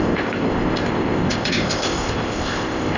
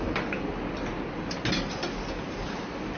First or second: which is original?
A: second